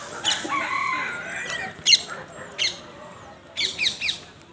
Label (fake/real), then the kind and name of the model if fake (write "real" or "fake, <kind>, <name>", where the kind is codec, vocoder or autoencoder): real